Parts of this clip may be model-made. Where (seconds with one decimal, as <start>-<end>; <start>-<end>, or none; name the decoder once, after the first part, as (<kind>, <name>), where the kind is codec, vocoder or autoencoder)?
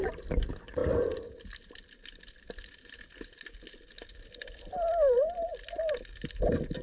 0.8-3.0 (vocoder, BigVGAN v2); 5.5-6.0